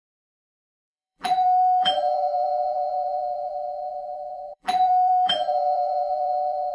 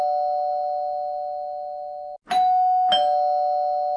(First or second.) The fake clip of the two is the first